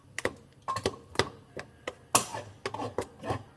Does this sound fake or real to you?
real